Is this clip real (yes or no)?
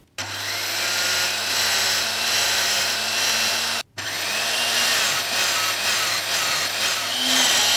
yes